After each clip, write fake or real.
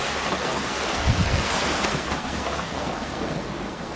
fake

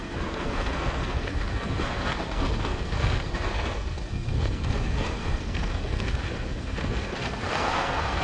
fake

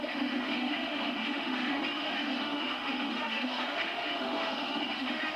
fake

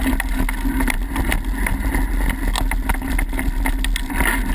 real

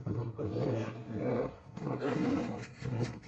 fake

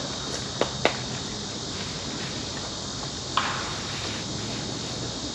real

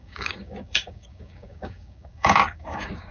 fake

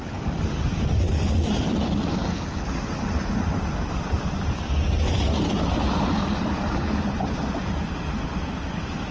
real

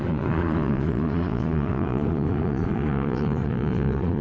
fake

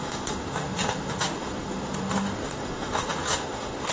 fake